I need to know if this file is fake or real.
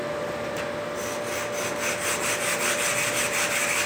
real